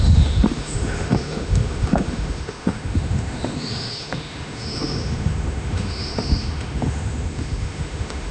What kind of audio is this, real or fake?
fake